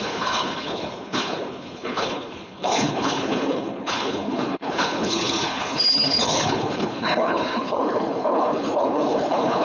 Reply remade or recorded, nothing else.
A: remade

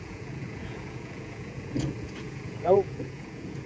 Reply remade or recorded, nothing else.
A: remade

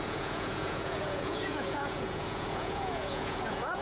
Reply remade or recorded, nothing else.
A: remade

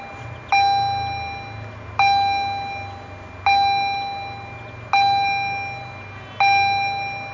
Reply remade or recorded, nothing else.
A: recorded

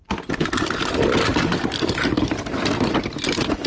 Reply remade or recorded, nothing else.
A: recorded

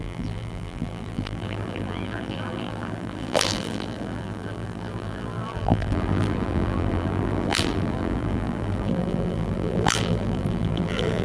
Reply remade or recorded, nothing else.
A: remade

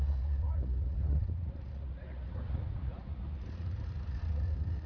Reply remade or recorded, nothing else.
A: remade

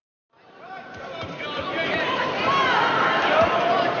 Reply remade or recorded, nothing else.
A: remade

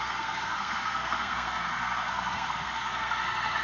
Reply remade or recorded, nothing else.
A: remade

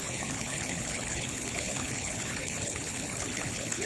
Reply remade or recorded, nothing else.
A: remade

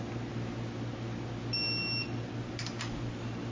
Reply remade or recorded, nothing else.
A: recorded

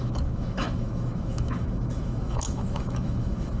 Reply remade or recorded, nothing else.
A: remade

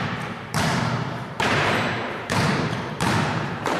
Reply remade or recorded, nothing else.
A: remade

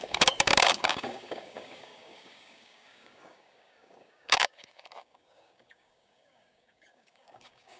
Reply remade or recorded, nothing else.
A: remade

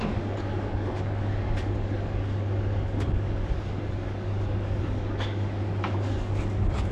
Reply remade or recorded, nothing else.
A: remade